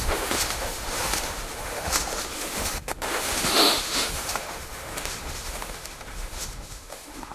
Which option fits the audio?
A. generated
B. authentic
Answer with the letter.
A